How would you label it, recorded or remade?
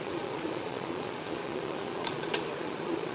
remade